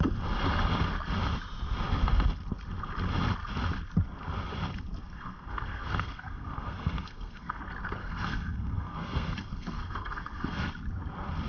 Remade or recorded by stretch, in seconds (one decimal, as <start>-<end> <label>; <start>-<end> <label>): 0.0-5.0 recorded; 5.0-7.6 remade; 7.6-8.0 recorded; 8.0-10.7 remade; 10.7-11.5 recorded